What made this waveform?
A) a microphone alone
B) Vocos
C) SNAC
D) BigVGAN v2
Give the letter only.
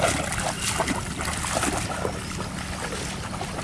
A